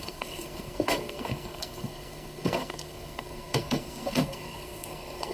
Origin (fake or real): fake